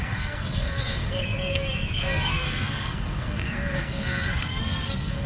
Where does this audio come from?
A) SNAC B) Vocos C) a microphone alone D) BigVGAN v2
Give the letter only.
A